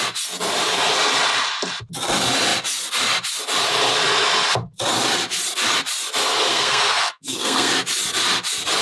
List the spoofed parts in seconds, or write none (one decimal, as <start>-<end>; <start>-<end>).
6.5-7.7